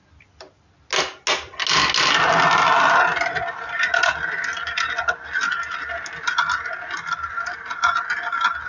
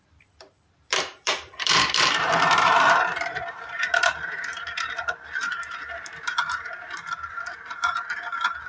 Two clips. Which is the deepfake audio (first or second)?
second